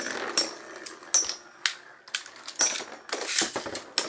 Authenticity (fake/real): real